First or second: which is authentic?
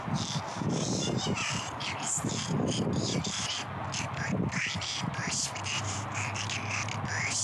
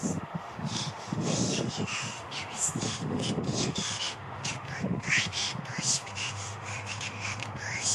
first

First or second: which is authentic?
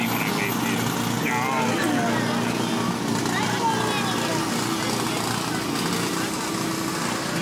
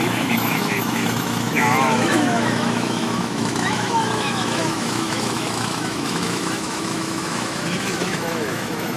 first